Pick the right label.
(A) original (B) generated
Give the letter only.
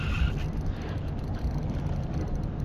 A